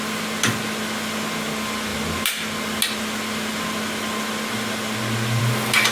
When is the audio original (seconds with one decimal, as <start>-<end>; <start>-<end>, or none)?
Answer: 0.0-5.9